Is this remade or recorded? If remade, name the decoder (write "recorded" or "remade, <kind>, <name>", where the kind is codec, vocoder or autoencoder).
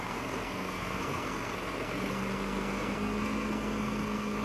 remade, codec, SNAC